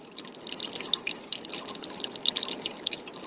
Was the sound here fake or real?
real